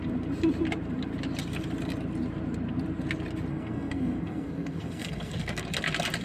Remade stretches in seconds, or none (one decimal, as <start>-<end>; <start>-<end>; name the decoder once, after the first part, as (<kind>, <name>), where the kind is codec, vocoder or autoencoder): 3.5-5.6 (codec, SNAC)